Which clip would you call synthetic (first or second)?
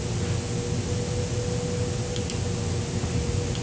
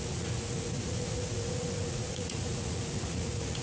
second